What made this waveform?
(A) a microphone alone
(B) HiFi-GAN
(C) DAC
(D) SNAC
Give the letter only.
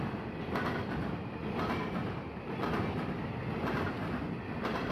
A